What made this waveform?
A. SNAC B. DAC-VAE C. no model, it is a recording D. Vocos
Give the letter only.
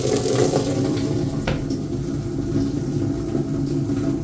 C